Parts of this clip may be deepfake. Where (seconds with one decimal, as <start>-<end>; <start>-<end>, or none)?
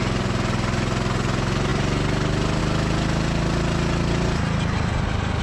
none